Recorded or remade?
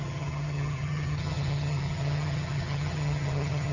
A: remade